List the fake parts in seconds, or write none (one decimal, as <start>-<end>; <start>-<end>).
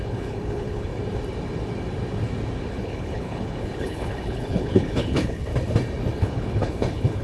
0.0-0.9; 2.7-5.5; 6.2-7.2